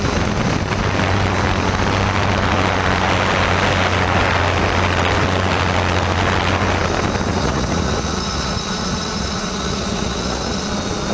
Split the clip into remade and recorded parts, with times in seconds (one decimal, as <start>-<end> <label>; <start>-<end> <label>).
0.0-7.3 recorded; 7.3-10.6 remade; 10.6-11.1 recorded